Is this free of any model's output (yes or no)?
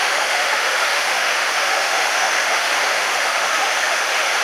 no